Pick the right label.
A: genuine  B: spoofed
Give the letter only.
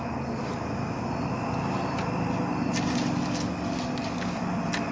A